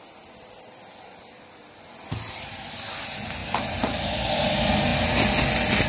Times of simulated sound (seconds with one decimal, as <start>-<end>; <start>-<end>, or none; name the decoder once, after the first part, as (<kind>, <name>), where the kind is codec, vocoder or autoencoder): 3.4-4.5 (vocoder, BigVGAN v2)